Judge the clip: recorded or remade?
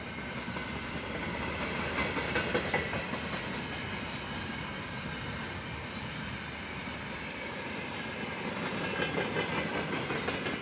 recorded